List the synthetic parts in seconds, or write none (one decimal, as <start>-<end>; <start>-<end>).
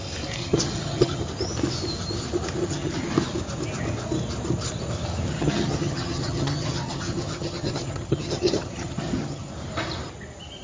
0.4-1.2; 2.6-3.1; 5.3-9.5